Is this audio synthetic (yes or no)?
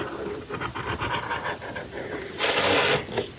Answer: no